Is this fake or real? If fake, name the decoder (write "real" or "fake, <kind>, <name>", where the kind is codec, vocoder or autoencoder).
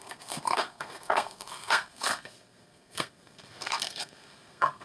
fake, codec, SNAC